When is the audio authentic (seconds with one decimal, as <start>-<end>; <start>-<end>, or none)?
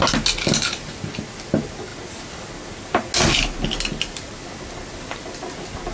0.0-5.9